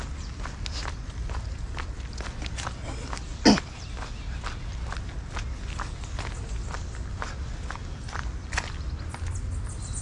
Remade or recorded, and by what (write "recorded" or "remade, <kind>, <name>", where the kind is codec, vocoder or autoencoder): recorded